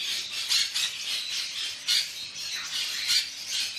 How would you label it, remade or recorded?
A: recorded